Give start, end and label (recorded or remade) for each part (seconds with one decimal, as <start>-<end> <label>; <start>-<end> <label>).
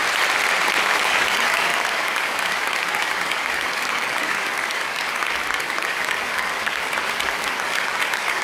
0.0-0.8 recorded; 0.8-8.4 remade